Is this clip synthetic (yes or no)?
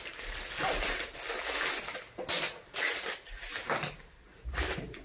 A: no